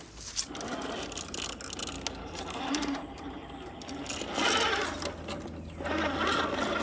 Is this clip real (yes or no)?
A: yes